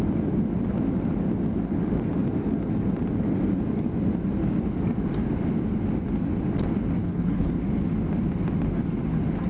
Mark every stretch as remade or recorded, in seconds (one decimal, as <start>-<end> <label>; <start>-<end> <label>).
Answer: 0.0-7.0 recorded; 7.0-7.5 remade; 7.5-9.5 recorded